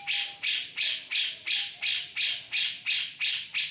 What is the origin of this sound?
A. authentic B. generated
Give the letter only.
A